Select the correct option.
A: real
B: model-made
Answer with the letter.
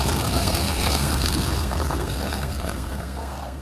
B